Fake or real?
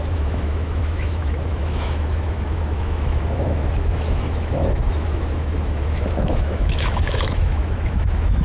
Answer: fake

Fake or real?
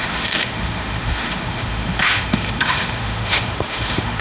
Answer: fake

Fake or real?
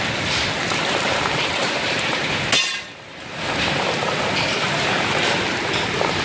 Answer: real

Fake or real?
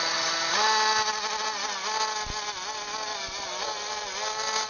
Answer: real